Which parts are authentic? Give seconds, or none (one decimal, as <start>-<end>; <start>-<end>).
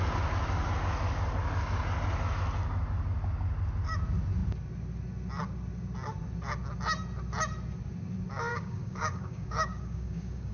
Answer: 0.0-8.5